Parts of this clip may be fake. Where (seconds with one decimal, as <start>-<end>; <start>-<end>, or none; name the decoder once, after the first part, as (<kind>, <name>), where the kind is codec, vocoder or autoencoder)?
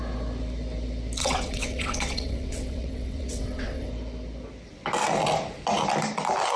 1.2-3.9 (vocoder, WaveNeXt)